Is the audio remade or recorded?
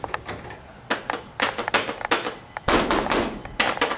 recorded